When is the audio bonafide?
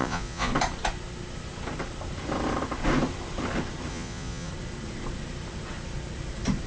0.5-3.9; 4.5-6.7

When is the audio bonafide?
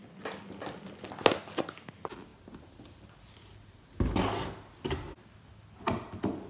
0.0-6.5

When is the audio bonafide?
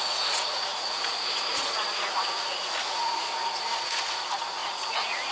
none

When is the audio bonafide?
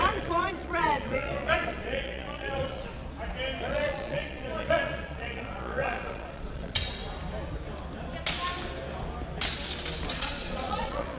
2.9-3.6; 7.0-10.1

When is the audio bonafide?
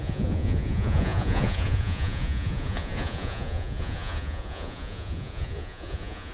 none